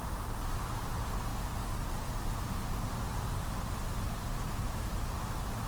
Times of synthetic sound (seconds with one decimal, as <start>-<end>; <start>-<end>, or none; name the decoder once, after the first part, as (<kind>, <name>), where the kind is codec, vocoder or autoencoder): none